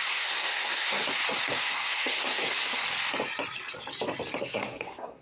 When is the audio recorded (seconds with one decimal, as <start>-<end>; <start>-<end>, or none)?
1.0-1.6; 2.8-4.4